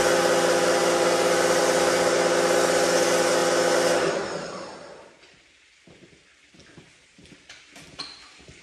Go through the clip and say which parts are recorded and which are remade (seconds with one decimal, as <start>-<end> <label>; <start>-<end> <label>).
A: 0.0-8.6 recorded